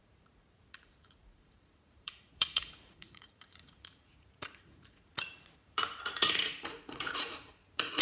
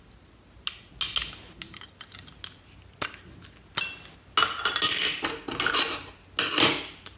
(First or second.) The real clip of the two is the second